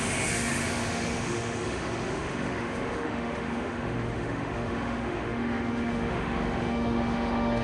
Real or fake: fake